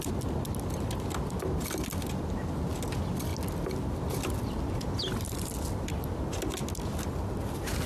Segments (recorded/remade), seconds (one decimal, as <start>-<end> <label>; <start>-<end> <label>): 0.0-7.9 recorded